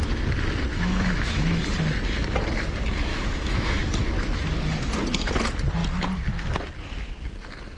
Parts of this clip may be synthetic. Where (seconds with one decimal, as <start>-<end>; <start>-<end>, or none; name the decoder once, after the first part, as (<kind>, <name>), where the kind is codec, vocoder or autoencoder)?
0.7-1.6 (autoencoder, DAC-VAE); 3.1-3.8